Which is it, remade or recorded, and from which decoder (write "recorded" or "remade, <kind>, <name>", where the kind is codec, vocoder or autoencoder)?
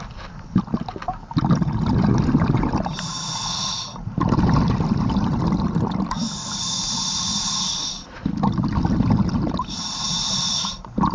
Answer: recorded